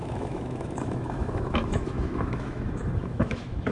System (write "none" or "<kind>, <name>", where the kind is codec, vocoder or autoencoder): autoencoder, DAC-VAE